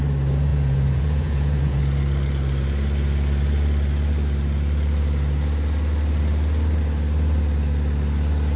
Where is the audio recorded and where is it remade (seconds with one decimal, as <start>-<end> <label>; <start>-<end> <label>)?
0.0-0.5 recorded; 0.5-1.8 remade; 1.8-8.6 recorded